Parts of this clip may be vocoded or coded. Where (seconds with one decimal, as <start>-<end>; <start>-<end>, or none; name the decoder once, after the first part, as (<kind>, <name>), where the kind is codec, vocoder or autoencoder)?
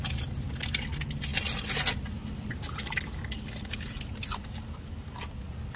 none